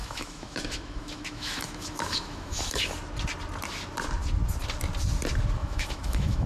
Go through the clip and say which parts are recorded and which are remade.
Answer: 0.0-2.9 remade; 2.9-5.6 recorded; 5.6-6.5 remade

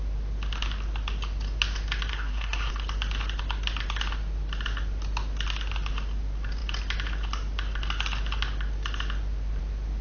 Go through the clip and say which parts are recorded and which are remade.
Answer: 0.0-2.1 recorded; 2.1-2.7 remade; 2.7-10.0 recorded

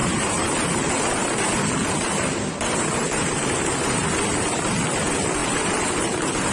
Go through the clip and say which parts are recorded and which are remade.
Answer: 0.0-0.9 remade; 0.9-3.0 recorded; 3.0-4.2 remade; 4.2-6.5 recorded

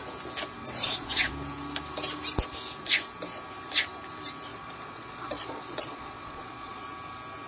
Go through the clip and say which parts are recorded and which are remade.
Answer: 0.0-0.6 recorded; 0.6-1.3 remade; 1.3-4.5 recorded; 4.5-6.8 remade; 6.8-7.5 recorded

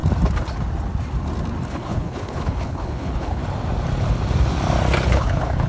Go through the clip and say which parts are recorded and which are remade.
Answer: 0.0-1.7 recorded; 1.7-3.4 remade; 3.4-5.1 recorded; 5.1-5.7 remade

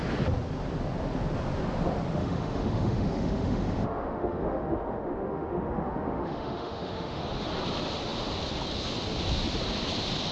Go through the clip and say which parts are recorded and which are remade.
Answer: 0.0-2.2 recorded; 2.2-7.2 remade; 7.2-10.3 recorded

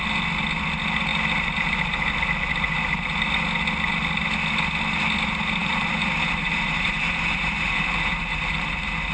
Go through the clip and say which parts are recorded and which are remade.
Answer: 0.0-5.6 recorded; 5.6-9.1 remade